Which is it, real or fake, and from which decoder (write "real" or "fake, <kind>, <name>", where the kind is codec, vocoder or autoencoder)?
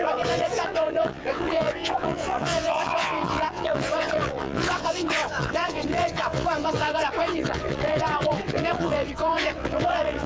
fake, vocoder, WaveNeXt